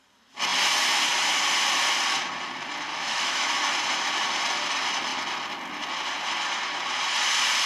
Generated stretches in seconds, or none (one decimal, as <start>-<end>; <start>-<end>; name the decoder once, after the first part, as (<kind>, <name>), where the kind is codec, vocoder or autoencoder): 2.9-3.7 (autoencoder, DAC-VAE)